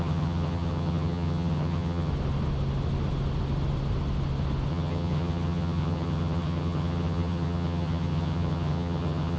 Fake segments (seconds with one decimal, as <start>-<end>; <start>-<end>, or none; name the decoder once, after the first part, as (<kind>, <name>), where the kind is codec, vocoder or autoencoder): 0.0-2.1 (vocoder, HiFi-GAN); 4.7-9.4